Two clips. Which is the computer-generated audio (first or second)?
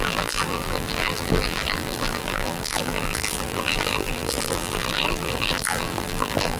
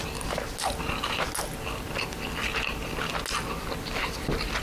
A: first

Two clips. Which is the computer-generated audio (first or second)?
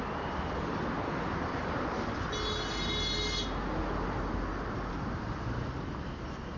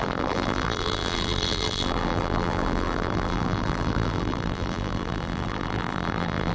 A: second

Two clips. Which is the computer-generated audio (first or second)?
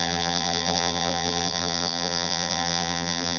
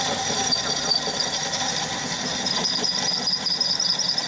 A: first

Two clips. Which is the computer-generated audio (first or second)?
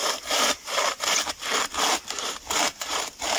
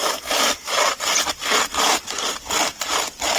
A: first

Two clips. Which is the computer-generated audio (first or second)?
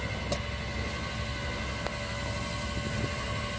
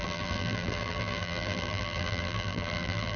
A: second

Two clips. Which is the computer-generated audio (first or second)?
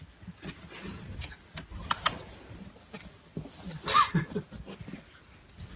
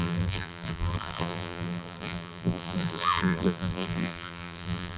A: second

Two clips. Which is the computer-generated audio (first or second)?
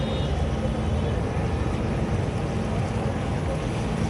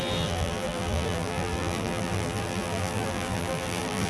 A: second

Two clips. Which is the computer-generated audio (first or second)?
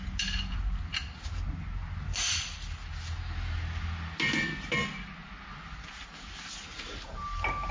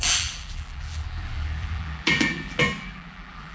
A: second